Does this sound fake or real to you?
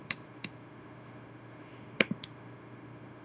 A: fake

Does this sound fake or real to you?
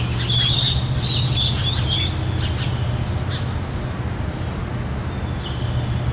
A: real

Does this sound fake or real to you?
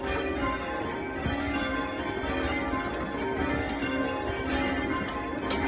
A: real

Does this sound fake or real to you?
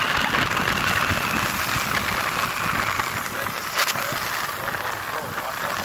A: real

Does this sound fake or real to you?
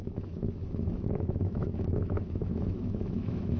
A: fake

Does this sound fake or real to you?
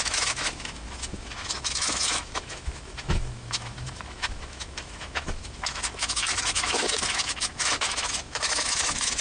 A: fake